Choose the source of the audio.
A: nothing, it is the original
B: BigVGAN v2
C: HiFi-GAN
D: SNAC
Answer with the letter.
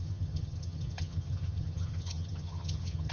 C